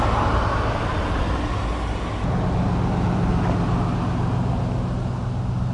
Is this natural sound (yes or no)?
yes